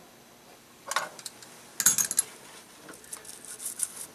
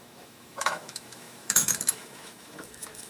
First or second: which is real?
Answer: first